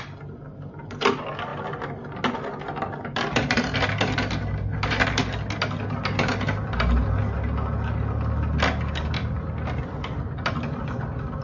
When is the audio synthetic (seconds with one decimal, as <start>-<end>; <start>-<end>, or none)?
none